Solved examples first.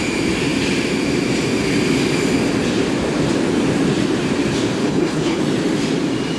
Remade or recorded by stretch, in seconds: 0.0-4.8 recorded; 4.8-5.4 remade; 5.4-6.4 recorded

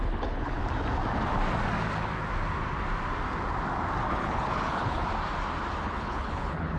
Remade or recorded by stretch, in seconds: 0.0-0.6 remade; 0.6-4.1 recorded; 4.1-5.1 remade; 5.1-5.8 recorded; 5.8-6.8 remade

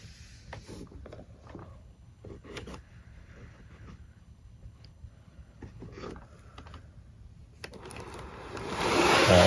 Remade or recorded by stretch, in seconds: 0.0-1.6 recorded; 1.6-6.1 remade; 6.1-9.5 recorded

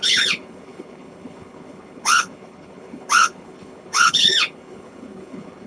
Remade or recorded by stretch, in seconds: 0.0-5.7 remade